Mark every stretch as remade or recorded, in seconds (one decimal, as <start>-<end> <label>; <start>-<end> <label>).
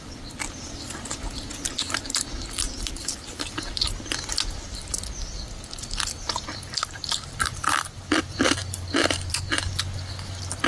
0.0-8.6 recorded; 8.6-9.3 remade; 9.3-10.7 recorded